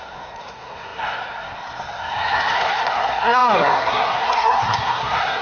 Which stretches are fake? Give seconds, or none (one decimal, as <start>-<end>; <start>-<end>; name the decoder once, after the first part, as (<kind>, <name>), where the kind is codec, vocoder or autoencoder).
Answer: 0.0-5.4 (codec, SNAC)